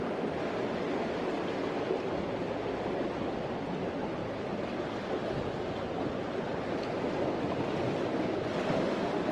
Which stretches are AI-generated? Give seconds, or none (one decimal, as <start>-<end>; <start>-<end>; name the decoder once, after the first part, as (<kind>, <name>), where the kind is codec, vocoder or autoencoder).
none